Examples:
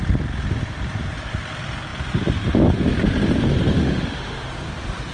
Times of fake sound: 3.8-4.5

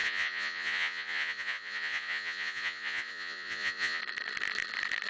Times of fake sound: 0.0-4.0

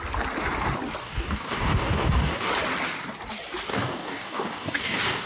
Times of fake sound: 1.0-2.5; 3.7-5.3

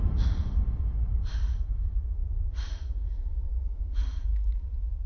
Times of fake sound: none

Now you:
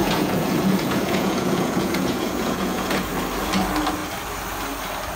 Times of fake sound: 0.0-3.1

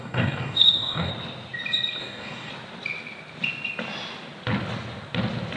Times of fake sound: 0.0-1.1; 2.0-2.5

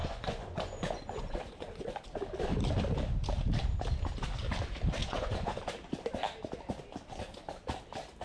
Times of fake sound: 0.0-2.0; 5.0-5.6

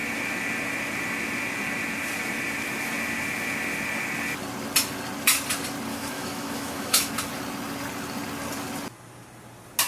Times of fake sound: 5.9-7.1